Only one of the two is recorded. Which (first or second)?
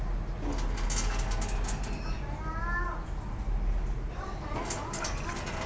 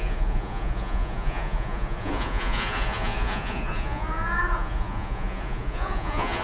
first